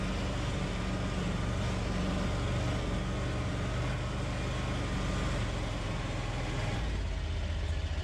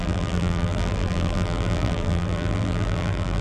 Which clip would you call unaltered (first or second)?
first